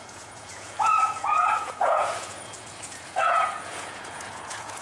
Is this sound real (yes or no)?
no